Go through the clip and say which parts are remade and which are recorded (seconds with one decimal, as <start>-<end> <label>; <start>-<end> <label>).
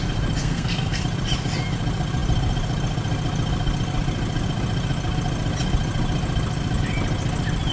0.0-0.4 recorded; 0.4-1.0 remade; 1.0-7.7 recorded